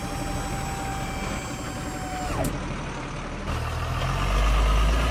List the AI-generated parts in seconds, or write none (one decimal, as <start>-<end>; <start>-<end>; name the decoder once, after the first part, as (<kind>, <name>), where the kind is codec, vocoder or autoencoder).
none